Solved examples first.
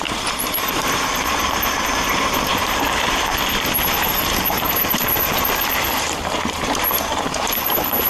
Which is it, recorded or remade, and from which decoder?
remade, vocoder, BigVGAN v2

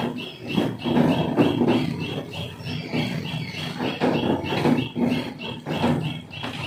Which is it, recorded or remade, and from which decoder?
recorded